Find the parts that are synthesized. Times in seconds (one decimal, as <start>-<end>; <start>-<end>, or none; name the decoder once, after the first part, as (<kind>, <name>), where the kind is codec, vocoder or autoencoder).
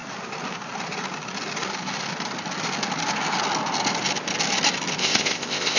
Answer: 5.0-5.8 (codec, ZipCodec)